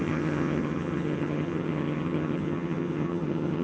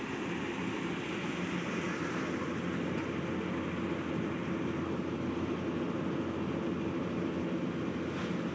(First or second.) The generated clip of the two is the first